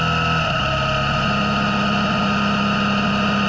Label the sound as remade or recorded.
recorded